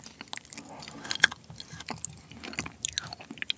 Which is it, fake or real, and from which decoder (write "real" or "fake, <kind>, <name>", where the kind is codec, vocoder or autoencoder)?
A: real